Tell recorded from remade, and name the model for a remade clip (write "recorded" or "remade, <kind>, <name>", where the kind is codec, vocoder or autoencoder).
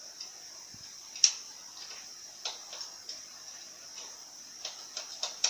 remade, vocoder, BigVGAN v2